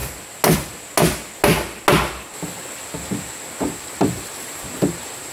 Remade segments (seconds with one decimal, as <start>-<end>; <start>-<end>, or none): none